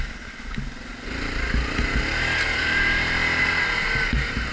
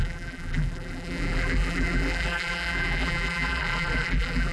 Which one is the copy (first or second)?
second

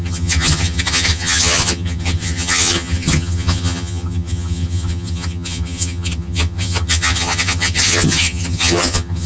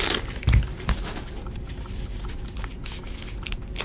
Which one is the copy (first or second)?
first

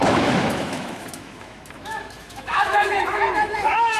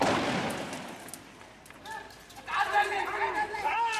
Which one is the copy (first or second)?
first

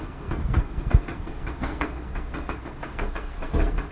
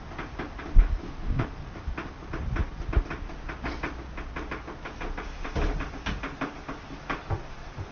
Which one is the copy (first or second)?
first